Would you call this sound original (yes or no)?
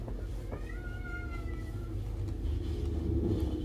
yes